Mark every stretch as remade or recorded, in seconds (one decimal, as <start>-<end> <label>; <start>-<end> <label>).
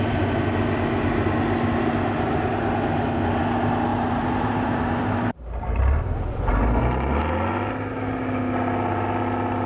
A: 0.0-3.9 recorded; 3.9-6.8 remade; 6.8-9.7 recorded